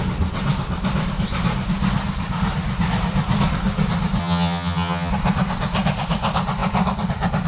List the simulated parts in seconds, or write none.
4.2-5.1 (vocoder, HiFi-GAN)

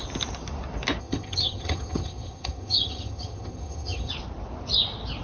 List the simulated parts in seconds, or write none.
1.0-4.1 (vocoder, HiFi-GAN)

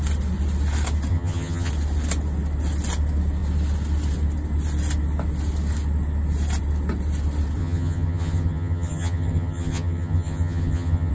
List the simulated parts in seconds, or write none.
1.1-1.7 (vocoder, HiFi-GAN); 7.6-11.1

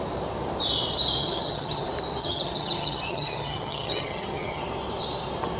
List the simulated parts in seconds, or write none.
1.2-1.8 (vocoder, HiFi-GAN); 2.2-4.6

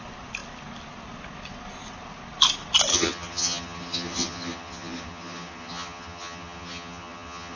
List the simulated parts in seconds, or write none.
2.9-7.6 (vocoder, HiFi-GAN)